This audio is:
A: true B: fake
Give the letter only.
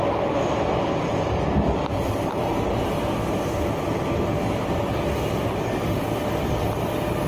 A